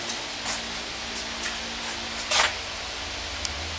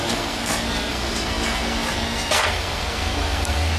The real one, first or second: first